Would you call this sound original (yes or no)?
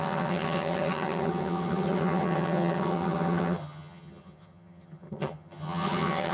no